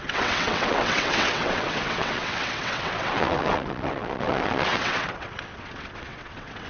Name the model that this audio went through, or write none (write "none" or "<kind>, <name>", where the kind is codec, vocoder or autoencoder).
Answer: vocoder, WaveNeXt